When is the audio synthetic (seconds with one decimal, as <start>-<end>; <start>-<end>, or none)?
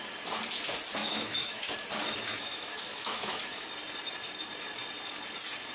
1.0-1.7; 2.3-3.7